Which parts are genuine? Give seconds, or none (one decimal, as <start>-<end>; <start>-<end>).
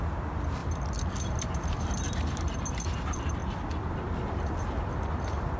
0.0-5.6